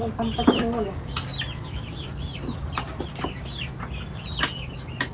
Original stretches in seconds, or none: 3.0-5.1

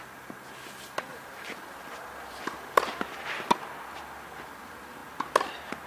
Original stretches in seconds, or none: 0.0-1.1; 3.5-5.9

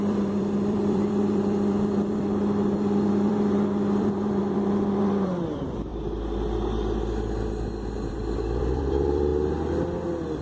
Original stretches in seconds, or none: 5.9-8.1; 9.3-10.4